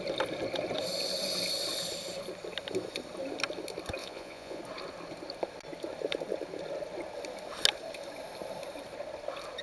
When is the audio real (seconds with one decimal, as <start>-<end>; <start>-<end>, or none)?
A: 0.0-4.0; 4.6-9.6